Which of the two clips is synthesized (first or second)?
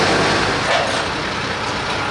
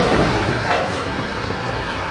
second